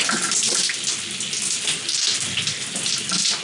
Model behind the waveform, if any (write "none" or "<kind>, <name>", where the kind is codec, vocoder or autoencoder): none